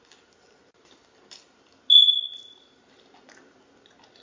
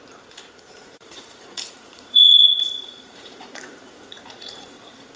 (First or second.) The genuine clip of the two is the first